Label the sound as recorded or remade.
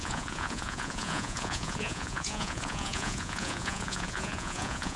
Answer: remade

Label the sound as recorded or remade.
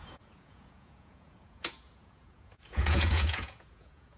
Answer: remade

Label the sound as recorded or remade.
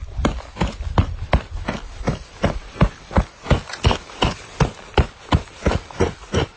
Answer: recorded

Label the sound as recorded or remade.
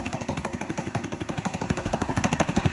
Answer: remade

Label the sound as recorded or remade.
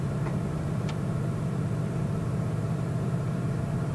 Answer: remade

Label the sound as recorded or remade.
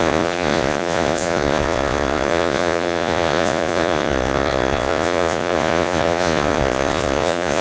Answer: remade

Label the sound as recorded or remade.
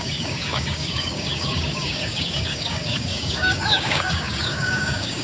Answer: remade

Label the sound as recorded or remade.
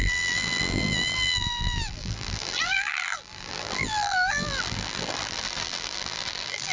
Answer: remade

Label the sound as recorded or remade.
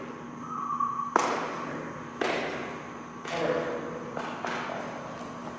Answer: recorded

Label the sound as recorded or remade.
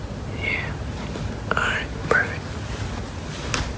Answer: recorded